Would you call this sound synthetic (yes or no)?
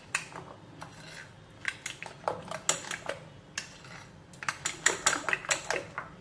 no